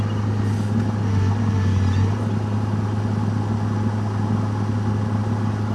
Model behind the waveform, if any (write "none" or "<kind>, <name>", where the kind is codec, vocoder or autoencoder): none